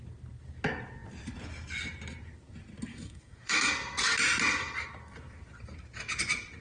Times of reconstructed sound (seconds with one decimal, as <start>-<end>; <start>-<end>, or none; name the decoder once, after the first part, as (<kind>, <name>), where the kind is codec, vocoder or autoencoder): 2.9-3.7 (autoencoder, DAC-VAE)